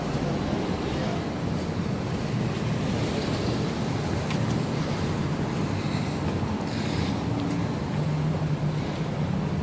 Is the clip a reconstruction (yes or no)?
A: no